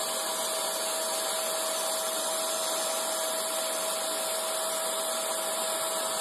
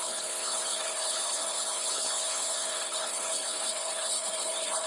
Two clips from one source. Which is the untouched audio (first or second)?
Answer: first